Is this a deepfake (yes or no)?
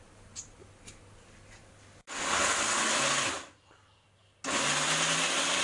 no